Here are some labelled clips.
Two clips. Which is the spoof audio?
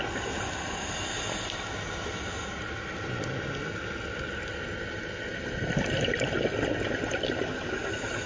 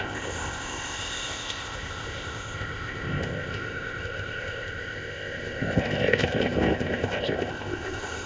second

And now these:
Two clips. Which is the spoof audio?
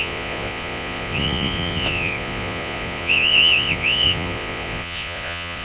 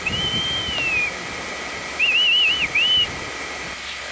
first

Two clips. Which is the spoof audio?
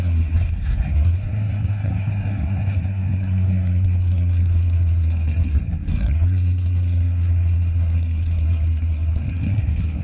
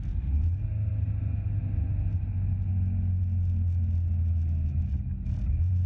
first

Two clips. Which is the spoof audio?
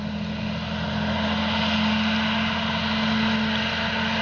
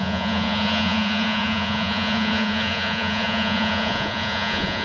second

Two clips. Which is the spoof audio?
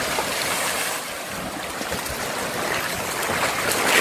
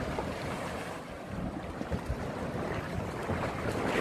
second